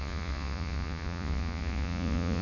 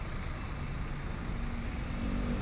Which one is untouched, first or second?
second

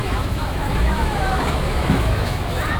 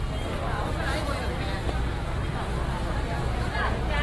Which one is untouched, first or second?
second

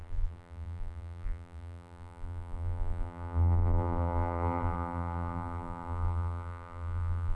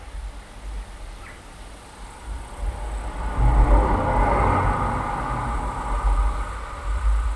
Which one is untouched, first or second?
second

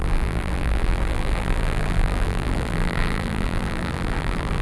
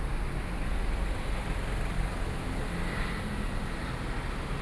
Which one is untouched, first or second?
second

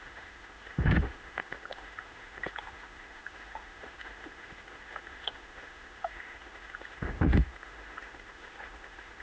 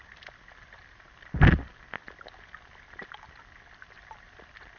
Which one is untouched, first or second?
second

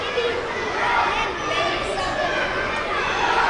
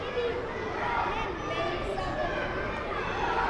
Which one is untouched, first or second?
second